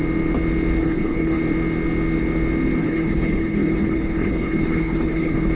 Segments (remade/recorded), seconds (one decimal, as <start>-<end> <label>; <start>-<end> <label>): 0.0-0.8 recorded; 0.8-1.4 remade; 1.4-2.8 recorded; 2.8-5.5 remade